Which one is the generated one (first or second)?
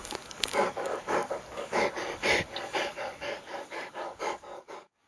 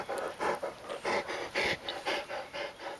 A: first